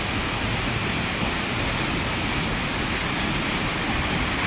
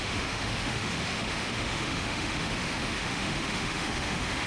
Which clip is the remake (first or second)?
second